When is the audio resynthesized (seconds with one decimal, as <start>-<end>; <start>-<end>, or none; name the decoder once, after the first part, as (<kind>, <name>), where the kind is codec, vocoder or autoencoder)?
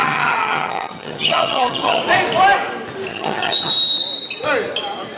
0.0-2.0 (vocoder, HiFi-GAN); 3.1-3.7